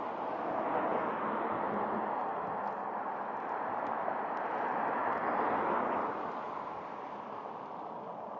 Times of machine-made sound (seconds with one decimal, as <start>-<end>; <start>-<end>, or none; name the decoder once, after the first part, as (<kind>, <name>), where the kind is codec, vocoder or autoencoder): none